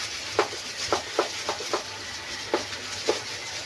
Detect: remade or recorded recorded